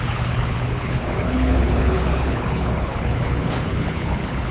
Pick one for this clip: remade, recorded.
remade